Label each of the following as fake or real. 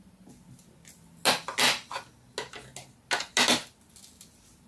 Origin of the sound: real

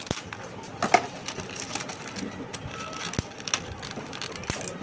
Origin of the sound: real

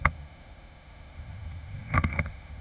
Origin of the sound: fake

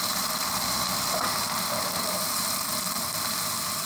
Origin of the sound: real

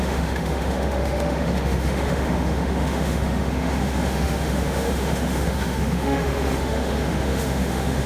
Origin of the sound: fake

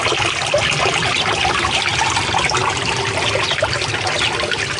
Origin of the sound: real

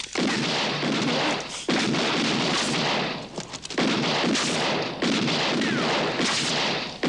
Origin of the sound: real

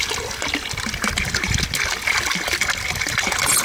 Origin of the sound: real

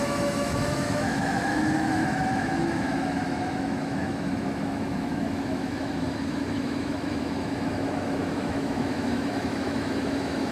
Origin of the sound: fake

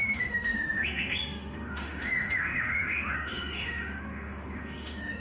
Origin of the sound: fake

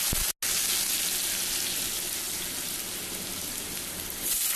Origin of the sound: real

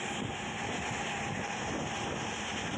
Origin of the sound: real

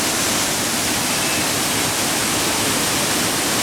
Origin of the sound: real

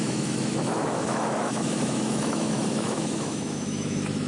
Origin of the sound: fake